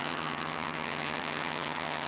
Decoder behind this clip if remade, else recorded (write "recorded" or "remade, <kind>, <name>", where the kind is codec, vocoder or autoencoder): remade, vocoder, HiFi-GAN